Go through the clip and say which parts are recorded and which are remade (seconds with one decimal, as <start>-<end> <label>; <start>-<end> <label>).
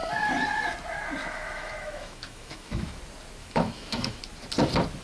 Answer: 0.0-1.2 recorded; 1.2-3.0 remade; 3.0-3.4 recorded; 3.4-4.2 remade; 4.2-5.0 recorded